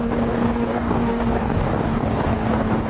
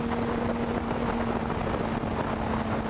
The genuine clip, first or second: second